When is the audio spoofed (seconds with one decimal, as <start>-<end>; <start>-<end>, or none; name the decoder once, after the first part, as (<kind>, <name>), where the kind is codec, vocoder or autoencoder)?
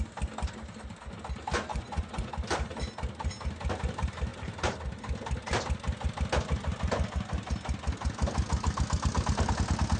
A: 1.7-2.3 (vocoder, Vocos)